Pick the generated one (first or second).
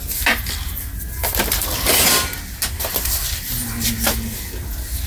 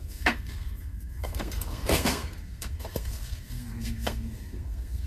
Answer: second